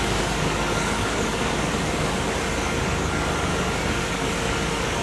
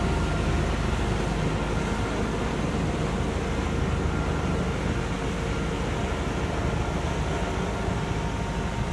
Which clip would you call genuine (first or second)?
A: second